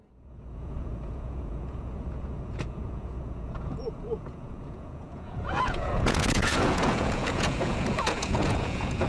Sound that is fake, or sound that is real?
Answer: fake